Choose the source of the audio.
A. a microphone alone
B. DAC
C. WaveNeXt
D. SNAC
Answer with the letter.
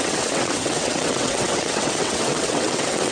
C